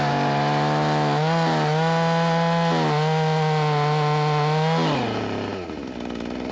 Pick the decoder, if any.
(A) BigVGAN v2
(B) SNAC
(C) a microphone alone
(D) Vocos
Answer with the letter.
C